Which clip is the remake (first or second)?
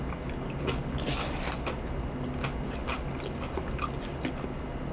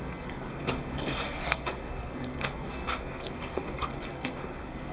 second